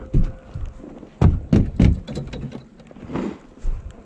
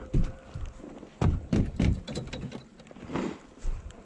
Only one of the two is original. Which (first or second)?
first